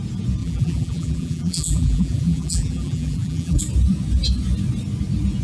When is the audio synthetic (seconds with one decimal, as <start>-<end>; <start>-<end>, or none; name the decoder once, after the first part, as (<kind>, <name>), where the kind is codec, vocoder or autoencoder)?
0.4-3.6 (vocoder, BigVGAN v2)